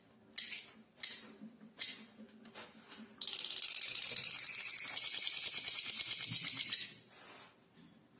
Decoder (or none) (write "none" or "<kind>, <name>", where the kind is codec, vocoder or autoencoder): none